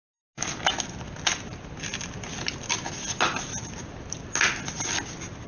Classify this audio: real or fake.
real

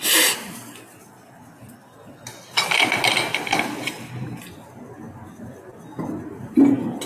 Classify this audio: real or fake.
real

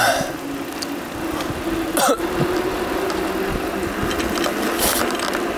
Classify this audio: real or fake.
real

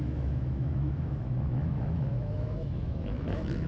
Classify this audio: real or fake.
fake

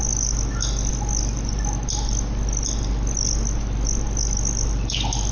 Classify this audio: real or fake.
real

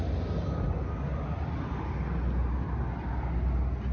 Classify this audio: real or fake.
real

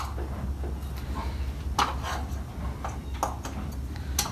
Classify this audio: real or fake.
real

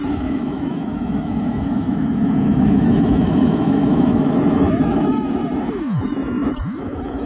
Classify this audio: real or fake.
fake